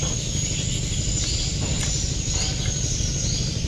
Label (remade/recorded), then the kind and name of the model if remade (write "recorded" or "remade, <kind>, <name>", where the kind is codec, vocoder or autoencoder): recorded